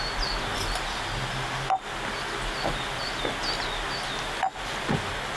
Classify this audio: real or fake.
real